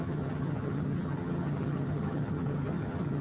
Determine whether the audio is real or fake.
fake